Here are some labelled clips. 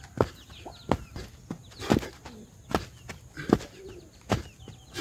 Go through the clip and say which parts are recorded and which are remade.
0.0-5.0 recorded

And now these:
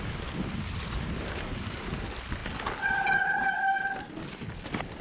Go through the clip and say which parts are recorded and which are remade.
0.0-5.0 recorded

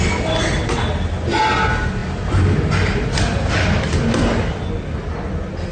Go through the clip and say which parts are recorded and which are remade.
0.0-5.7 recorded